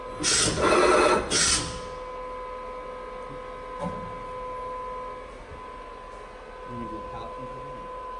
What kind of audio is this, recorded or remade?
recorded